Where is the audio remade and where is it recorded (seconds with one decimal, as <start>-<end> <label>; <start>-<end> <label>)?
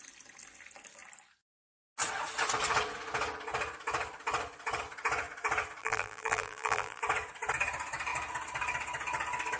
0.0-5.8 recorded; 5.8-7.0 remade; 7.0-9.6 recorded